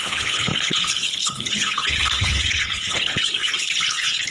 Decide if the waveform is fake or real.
fake